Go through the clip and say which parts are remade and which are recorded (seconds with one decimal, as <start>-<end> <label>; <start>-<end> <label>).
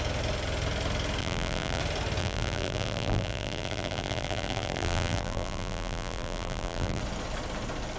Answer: 0.0-1.2 recorded; 1.2-1.8 remade; 1.8-2.2 recorded; 2.2-7.0 remade; 7.0-8.0 recorded